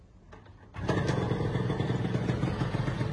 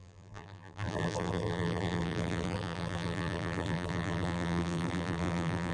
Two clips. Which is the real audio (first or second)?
first